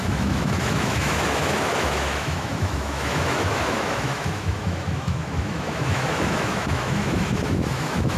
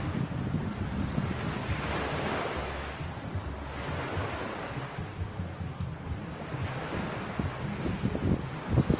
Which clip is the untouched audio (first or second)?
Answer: second